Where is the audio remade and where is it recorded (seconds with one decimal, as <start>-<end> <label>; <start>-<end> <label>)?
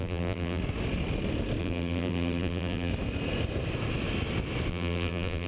0.0-0.6 remade; 0.6-1.6 recorded; 1.6-2.9 remade; 2.9-4.7 recorded; 4.7-5.5 remade